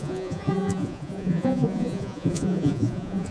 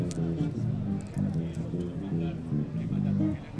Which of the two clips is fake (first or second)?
first